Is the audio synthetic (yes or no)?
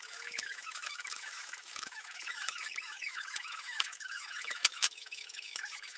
yes